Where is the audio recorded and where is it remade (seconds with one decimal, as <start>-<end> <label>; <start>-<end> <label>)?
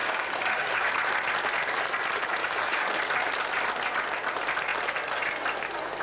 0.0-0.9 remade; 0.9-2.4 recorded; 2.4-2.9 remade; 2.9-6.0 recorded